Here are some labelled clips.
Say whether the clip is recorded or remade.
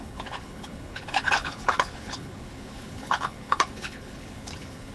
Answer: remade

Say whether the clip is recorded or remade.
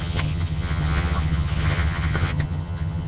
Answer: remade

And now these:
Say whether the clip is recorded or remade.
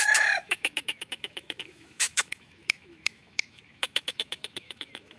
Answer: remade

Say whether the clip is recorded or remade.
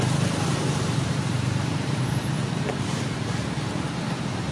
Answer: remade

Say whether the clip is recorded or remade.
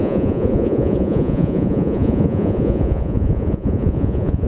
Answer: remade